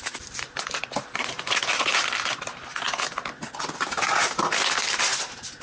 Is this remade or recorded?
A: recorded